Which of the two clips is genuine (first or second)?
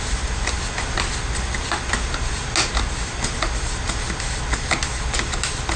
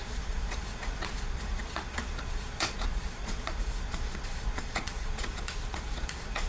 first